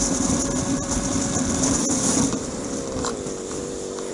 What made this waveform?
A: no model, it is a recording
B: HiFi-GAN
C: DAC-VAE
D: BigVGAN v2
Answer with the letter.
D